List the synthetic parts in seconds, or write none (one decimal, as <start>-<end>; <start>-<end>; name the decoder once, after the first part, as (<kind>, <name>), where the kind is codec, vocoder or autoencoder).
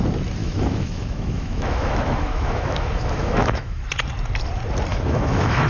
0.4-3.8 (autoencoder, DAC-VAE); 4.9-5.7